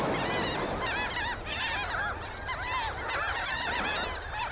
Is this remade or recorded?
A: recorded